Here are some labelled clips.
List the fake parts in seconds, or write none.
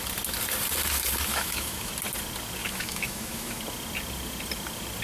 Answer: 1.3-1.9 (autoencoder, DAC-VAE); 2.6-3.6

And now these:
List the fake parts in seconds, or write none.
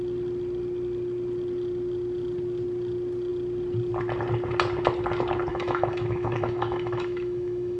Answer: 5.5-7.8 (autoencoder, DAC-VAE)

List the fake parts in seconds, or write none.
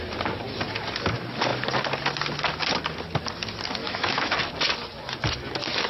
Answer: 3.8-4.4 (autoencoder, DAC-VAE)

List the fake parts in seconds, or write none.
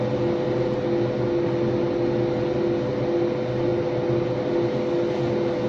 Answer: none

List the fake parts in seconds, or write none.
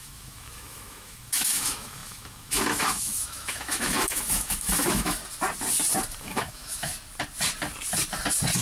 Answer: 0.0-5.2 (autoencoder, DAC-VAE); 6.2-6.9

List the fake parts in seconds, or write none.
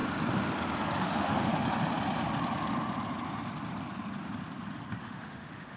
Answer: 1.0-1.5 (autoencoder, DAC-VAE); 5.0-5.8